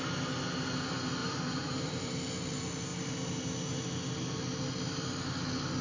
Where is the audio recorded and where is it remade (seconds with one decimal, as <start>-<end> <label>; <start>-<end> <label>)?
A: 0.0-1.2 recorded; 1.2-2.1 remade; 2.1-5.8 recorded